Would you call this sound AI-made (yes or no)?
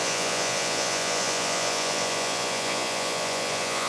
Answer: yes